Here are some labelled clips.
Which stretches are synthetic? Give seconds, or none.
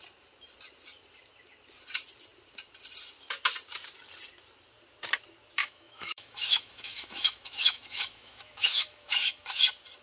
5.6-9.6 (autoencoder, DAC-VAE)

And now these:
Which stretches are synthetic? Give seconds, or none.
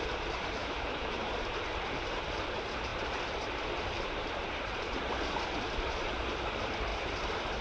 0.6-1.3 (autoencoder, DAC-VAE)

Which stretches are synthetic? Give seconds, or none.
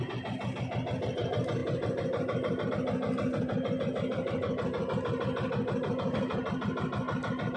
none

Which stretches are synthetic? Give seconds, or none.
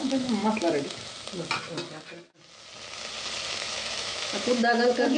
0.0-0.4 (autoencoder, DAC-VAE); 3.5-5.2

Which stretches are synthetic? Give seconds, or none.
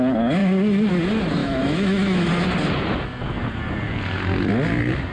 1.4-2.3 (autoencoder, DAC-VAE)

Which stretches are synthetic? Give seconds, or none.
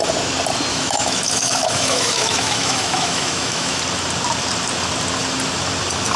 0.7-3.8 (autoencoder, DAC-VAE)